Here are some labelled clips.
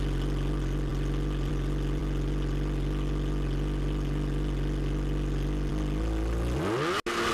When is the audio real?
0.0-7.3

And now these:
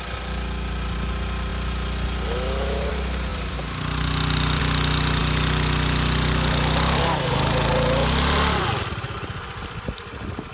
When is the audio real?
0.0-3.3; 4.6-10.5

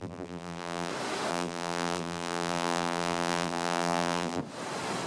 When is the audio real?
0.9-1.3; 4.4-5.1

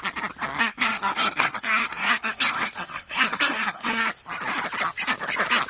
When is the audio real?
0.0-0.6; 4.0-5.7

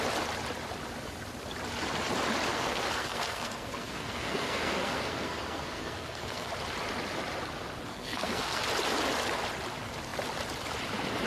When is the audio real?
0.0-2.5; 6.5-7.9; 8.6-11.3

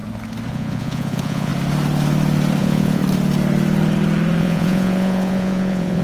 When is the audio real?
0.0-0.5; 1.5-2.6; 3.0-4.4